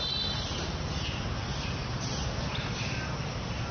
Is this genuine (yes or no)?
no